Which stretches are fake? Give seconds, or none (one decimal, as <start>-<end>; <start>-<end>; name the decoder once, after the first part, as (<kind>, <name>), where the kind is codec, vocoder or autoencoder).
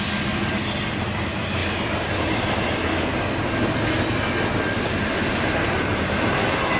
none